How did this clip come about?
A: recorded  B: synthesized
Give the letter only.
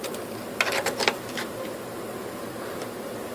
A